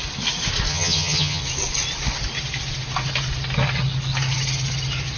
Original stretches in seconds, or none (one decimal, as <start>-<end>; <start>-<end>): 0.0-0.7; 1.4-5.2

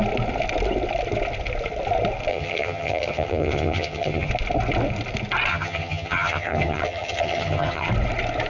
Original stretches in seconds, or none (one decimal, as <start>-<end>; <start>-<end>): 0.0-2.3; 4.3-5.5; 7.9-8.5

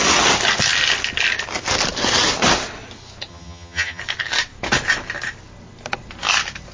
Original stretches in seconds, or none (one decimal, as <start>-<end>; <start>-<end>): 0.0-3.3; 4.0-6.7